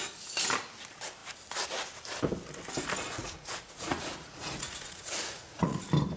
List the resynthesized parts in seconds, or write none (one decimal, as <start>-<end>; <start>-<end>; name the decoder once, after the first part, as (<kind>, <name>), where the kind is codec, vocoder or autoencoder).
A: 3.2-5.8 (vocoder, Vocos)